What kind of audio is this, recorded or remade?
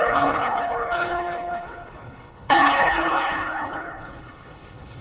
remade